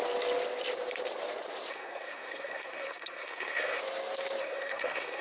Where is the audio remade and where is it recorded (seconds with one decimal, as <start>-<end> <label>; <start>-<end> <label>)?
0.0-1.7 recorded; 1.7-3.8 remade; 3.8-4.4 recorded; 4.4-5.2 remade